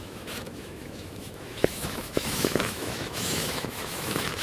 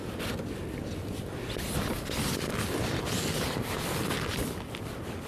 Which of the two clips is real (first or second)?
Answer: second